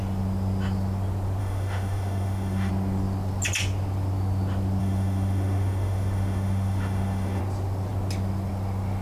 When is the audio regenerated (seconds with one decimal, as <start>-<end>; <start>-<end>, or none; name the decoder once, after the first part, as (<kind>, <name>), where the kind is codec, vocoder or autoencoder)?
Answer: 1.4-2.7 (autoencoder, DAC-VAE); 4.8-7.4

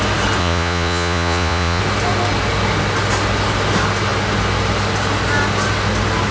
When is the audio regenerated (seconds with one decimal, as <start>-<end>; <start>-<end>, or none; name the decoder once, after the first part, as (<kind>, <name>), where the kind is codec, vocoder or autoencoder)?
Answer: 0.4-1.8 (vocoder, Vocos)

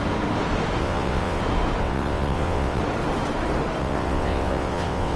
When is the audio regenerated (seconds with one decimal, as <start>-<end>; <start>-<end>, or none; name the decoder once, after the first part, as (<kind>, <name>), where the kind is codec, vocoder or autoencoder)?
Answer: 0.8-1.4 (vocoder, WaveNeXt); 1.8-2.8; 3.8-5.2

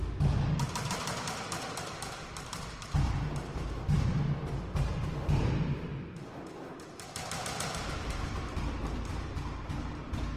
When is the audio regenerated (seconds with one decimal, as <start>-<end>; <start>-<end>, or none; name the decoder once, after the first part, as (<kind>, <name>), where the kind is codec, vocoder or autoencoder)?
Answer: 0.0-5.9 (vocoder, BigVGAN v2); 6.4-10.4